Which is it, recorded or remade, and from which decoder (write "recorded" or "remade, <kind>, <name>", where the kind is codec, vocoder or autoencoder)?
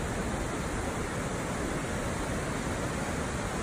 recorded